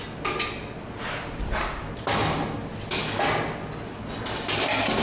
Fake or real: real